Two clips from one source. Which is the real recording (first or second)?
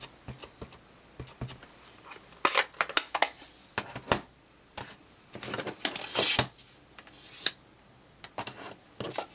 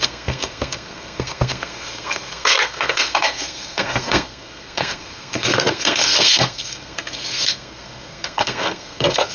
first